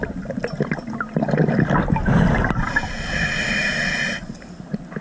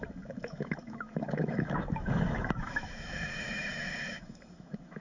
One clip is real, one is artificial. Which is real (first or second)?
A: first